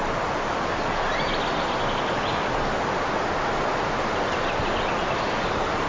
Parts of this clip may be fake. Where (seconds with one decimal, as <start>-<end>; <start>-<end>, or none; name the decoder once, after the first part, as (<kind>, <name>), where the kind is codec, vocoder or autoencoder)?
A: none